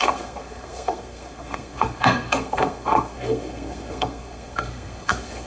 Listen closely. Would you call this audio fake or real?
fake